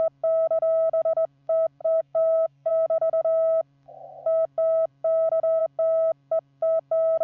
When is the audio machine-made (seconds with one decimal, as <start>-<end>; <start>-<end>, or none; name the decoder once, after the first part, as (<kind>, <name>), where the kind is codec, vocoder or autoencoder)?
1.8-2.7 (codec, SNAC)

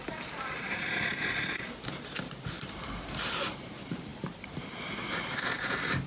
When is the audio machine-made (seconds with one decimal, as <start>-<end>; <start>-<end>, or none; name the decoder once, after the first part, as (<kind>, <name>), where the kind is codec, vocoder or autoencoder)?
0.0-6.1 (vocoder, BigVGAN v2)

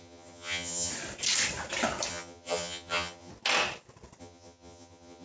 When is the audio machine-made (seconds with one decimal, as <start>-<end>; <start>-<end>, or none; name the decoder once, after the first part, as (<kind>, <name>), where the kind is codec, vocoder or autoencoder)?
0.0-0.9 (vocoder, HiFi-GAN); 2.1-3.3; 4.2-5.2

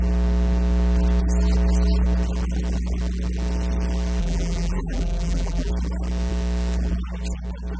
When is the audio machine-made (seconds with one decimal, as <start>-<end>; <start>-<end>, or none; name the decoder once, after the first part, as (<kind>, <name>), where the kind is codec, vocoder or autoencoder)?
4.2-5.7 (vocoder, BigVGAN v2)

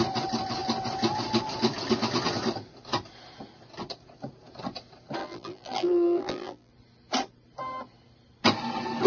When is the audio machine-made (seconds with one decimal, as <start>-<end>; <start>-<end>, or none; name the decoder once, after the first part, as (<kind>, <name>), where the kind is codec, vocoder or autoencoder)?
5.2-6.7 (vocoder, BigVGAN v2)